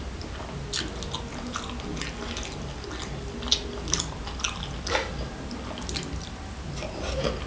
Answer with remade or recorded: recorded